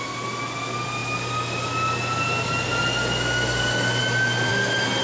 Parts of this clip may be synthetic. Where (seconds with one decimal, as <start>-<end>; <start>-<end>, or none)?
none